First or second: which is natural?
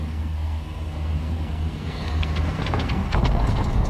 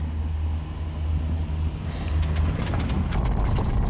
second